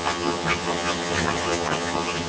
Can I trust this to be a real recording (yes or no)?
no